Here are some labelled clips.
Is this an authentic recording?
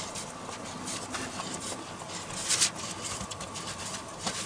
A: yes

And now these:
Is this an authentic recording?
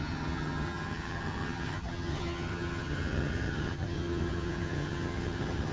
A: no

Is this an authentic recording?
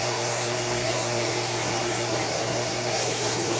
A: no